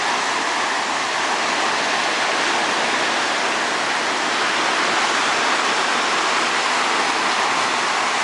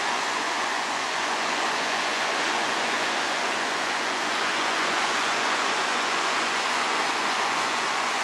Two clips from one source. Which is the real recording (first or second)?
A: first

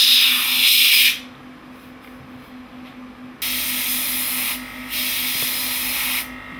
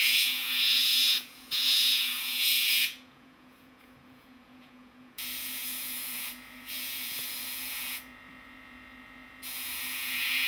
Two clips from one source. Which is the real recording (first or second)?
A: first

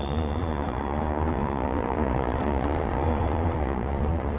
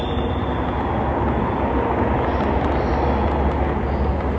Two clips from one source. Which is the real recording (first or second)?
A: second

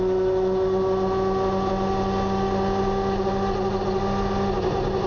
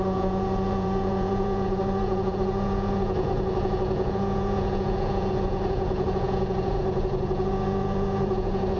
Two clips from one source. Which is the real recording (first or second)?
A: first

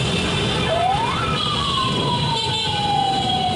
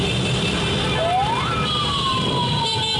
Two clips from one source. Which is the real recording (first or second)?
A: second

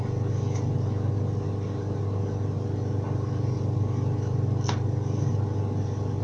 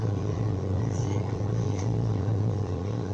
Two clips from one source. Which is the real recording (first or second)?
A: first